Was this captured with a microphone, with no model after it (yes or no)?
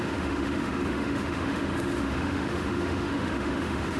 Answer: no